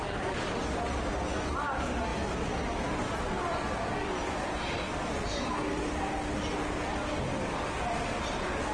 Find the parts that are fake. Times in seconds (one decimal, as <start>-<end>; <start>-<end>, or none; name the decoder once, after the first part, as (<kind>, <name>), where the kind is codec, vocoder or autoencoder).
none